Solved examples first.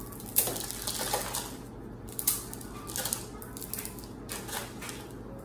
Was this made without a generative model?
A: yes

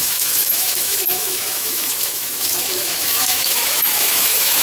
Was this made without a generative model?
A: no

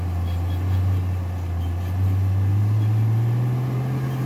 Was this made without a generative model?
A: yes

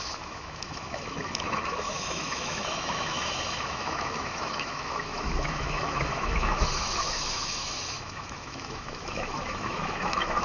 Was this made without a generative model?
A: no